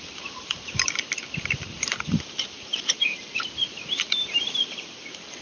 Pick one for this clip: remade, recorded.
remade